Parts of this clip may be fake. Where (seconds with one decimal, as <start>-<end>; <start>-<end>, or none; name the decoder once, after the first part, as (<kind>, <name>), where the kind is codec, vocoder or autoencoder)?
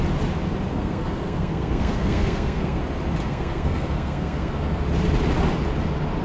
0.7-2.8 (codec, SNAC); 3.2-4.5